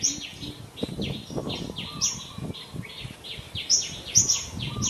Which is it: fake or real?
real